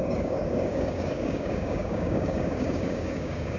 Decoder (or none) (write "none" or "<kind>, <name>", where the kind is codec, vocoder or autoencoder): codec, DAC